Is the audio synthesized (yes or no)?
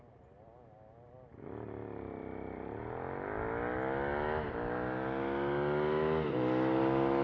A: no